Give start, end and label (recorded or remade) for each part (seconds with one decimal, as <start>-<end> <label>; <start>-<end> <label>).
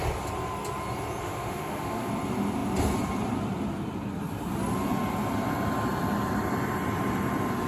0.0-1.2 recorded; 1.2-2.1 remade; 2.1-7.7 recorded